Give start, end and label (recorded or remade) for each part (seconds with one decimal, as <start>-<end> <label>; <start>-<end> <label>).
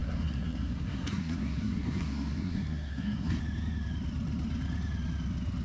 0.0-3.4 remade; 3.4-5.6 recorded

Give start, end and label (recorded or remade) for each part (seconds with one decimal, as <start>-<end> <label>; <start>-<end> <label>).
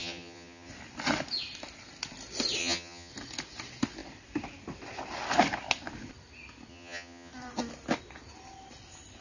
0.0-0.7 remade; 0.7-2.6 recorded; 2.6-3.1 remade; 3.1-6.7 recorded; 6.7-7.3 remade; 7.3-9.2 recorded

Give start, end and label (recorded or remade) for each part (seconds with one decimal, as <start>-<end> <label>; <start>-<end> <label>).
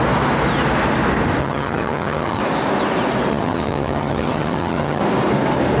0.0-1.4 recorded; 1.4-2.4 remade; 2.4-3.3 recorded; 3.3-5.0 remade; 5.0-5.8 recorded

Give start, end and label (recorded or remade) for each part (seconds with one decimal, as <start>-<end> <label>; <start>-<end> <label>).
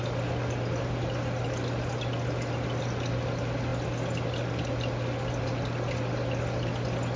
0.0-7.2 recorded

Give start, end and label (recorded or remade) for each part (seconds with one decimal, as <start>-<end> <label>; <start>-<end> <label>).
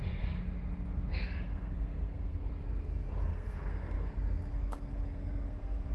0.0-1.1 recorded; 1.1-2.5 remade; 2.5-3.3 recorded; 3.3-4.1 remade; 4.1-4.5 recorded; 4.5-5.9 remade